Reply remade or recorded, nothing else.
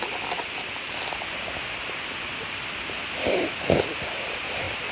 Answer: recorded